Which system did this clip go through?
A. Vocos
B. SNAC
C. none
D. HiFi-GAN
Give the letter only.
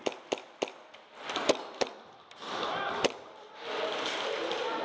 C